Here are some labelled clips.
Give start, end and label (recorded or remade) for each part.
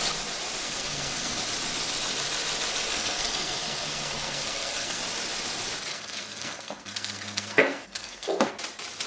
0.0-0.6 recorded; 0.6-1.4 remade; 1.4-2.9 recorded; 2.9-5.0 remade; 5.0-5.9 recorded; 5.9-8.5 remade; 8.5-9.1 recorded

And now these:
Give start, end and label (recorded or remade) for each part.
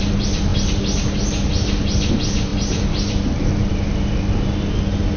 0.0-5.2 recorded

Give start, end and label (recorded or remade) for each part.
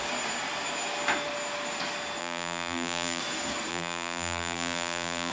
0.0-2.2 recorded; 2.2-3.2 remade; 3.2-3.7 recorded; 3.7-5.3 remade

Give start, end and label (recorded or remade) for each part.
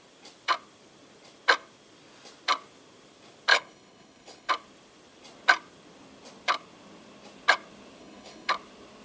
0.0-3.5 recorded; 3.5-4.5 remade; 4.5-8.0 recorded; 8.0-8.5 remade; 8.5-9.0 recorded